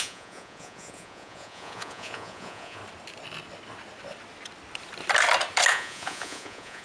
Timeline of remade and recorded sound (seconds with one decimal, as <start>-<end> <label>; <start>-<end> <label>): 0.0-2.8 remade; 2.8-5.7 recorded; 5.7-6.8 remade